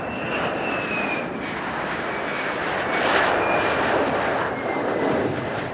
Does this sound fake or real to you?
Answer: fake